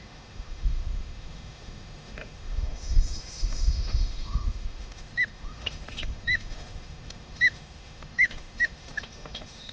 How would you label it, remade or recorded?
remade